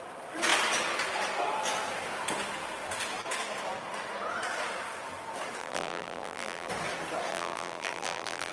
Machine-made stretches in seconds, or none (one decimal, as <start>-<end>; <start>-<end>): 5.6-6.7; 7.3-8.5